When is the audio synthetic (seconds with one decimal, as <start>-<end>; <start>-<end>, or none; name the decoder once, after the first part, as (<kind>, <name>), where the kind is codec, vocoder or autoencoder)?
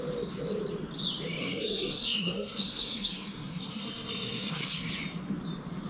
1.4-4.9 (codec, SNAC)